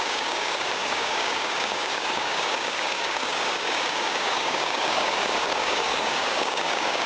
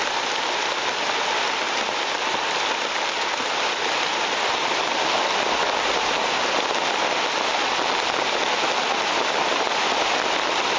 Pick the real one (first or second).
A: second